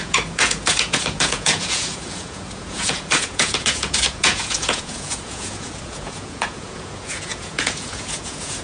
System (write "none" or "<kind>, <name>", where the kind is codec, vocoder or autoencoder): vocoder, Vocos